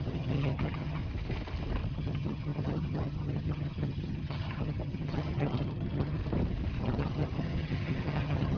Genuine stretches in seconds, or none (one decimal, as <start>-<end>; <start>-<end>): 1.0-1.9; 6.2-6.8